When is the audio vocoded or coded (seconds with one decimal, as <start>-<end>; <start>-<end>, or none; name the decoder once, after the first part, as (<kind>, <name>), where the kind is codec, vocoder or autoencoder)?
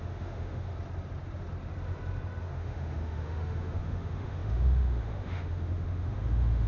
0.0-0.7 (autoencoder, DAC-VAE); 2.5-6.7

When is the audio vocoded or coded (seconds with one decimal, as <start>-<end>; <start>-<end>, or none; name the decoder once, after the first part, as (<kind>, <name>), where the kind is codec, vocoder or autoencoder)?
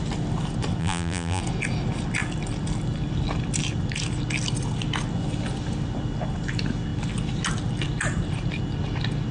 0.8-1.4 (vocoder, BigVGAN v2)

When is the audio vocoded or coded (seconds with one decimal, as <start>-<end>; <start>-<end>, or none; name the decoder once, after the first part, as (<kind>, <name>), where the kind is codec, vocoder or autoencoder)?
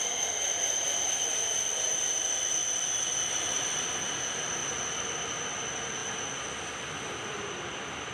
none